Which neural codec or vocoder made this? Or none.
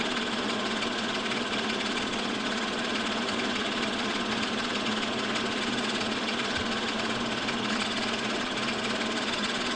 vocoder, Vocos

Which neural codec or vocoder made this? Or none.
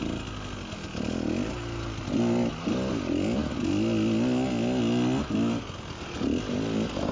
none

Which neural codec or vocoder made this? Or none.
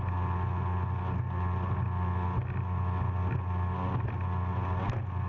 none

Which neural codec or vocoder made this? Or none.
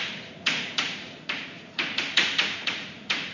vocoder, Vocos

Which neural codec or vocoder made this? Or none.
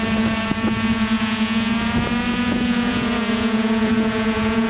vocoder, Vocos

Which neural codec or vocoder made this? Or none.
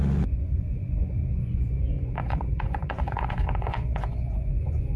vocoder, Vocos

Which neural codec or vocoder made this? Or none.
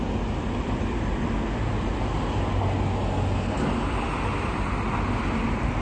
none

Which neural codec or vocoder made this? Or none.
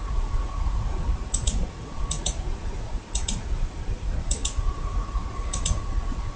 vocoder, Vocos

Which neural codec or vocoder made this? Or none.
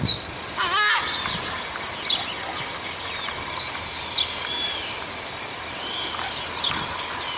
none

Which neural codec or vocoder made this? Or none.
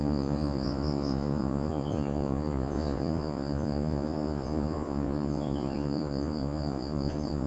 vocoder, Vocos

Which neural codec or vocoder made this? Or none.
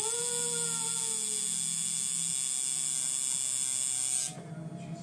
none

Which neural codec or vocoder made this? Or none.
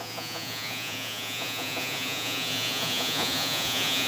vocoder, Vocos